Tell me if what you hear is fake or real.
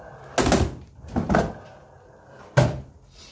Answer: real